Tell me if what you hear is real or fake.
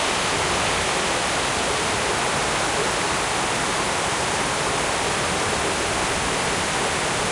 real